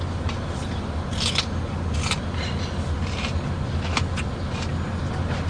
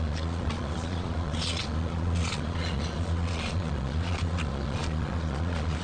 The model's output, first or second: second